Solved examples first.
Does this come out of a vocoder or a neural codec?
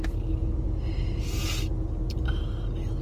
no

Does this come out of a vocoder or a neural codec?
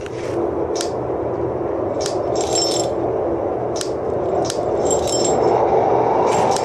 no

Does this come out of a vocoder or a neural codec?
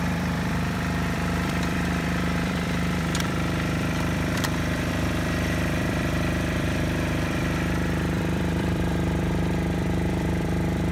yes